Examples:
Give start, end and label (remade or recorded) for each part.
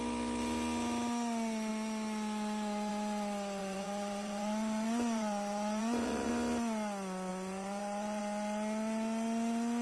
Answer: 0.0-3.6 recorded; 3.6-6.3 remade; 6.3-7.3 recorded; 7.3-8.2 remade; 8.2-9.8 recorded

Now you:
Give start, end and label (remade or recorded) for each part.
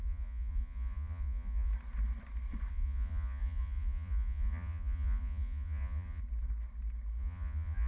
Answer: 0.0-1.7 remade; 1.7-2.7 recorded; 2.7-6.2 remade; 6.2-7.2 recorded; 7.2-7.9 remade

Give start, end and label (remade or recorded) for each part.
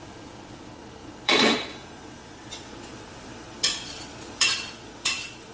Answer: 0.0-5.5 remade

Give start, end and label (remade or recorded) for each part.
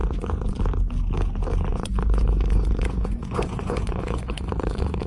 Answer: 0.0-0.6 remade; 0.6-1.7 recorded; 1.7-5.1 remade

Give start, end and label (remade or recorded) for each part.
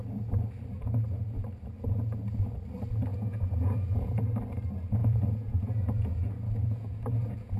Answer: 0.0-3.1 recorded; 3.1-4.2 remade; 4.2-5.0 recorded; 5.0-7.6 remade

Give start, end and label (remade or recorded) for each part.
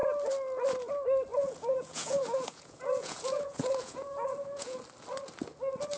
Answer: 0.0-1.3 recorded; 1.3-4.8 remade; 4.8-6.0 recorded